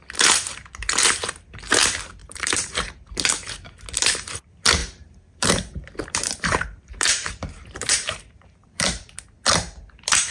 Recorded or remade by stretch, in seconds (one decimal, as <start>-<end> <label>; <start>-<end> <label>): 0.0-2.2 recorded; 2.2-2.9 remade; 2.9-4.8 recorded; 4.8-9.1 remade; 9.1-10.3 recorded